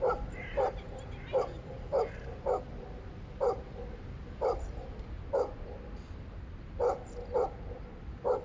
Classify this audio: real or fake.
real